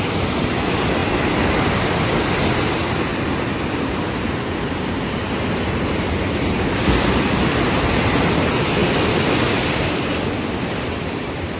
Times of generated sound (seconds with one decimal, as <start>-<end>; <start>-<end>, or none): 0.0-3.1; 5.9-11.6